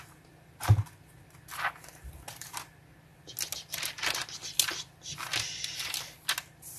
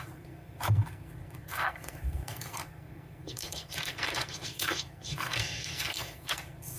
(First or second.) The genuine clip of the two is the first